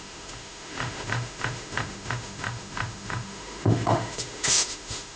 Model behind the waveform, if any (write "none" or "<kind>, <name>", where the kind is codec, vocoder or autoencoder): autoencoder, DAC-VAE